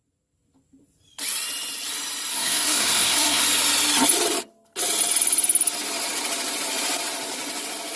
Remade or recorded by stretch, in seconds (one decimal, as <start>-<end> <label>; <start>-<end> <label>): 0.0-2.3 recorded; 2.3-3.4 remade; 3.4-8.0 recorded